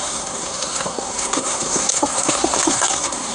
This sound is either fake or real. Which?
fake